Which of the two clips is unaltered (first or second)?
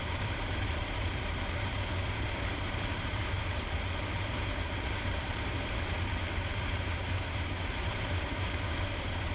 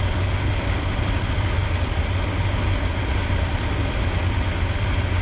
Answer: second